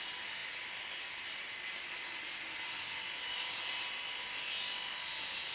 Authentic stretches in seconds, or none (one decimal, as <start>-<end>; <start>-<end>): 0.0-5.5